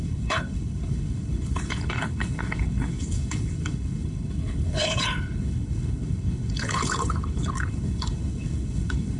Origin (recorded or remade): remade